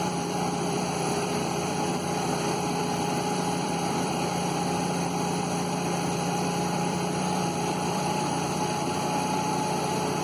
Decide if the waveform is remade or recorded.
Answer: remade